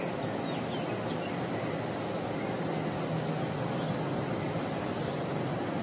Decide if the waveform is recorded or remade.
remade